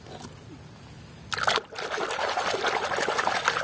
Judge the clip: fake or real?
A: real